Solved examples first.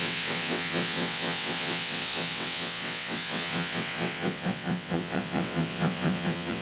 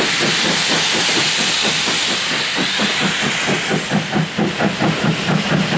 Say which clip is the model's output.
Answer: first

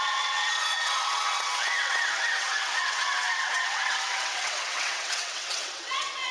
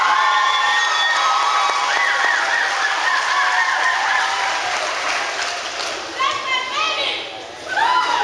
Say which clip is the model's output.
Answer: first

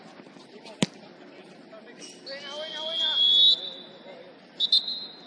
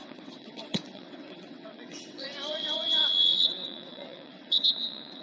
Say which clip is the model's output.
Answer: second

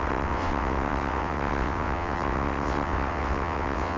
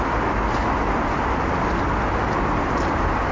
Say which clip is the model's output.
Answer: first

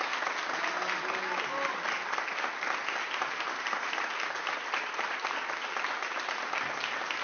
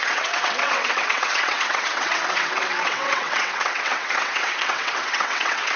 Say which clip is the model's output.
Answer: second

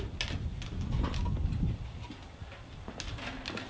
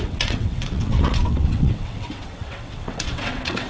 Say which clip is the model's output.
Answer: second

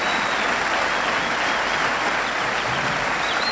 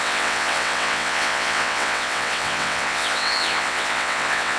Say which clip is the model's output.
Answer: second